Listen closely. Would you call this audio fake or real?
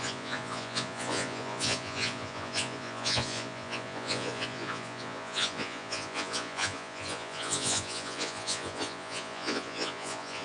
fake